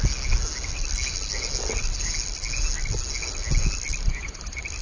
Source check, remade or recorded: recorded